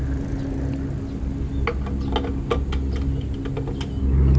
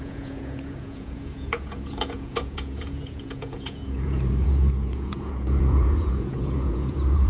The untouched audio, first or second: first